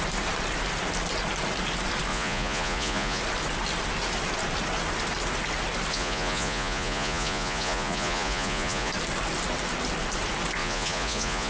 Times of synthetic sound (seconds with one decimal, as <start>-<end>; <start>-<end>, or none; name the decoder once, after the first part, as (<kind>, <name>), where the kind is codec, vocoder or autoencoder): 2.1-3.2 (vocoder, Vocos); 5.9-8.9; 10.6-11.5